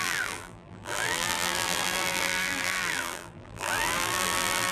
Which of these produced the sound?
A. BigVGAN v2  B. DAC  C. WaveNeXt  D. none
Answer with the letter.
A